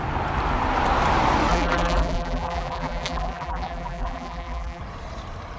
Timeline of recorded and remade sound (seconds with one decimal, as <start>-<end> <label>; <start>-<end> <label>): 0.0-1.5 recorded; 1.5-4.8 remade; 4.8-5.6 recorded